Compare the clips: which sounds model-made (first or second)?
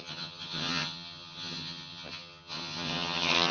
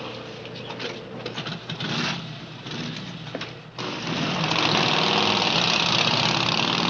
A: first